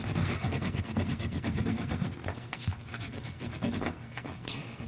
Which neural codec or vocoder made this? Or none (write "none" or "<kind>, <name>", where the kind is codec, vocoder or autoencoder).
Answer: codec, SNAC